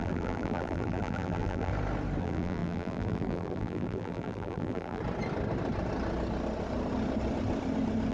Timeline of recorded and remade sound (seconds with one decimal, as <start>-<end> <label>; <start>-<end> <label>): 0.0-1.7 remade; 1.7-2.2 recorded; 2.2-5.0 remade; 5.0-8.1 recorded